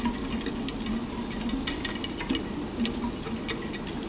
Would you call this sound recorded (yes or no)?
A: yes